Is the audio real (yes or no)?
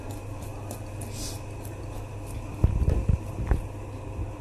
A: yes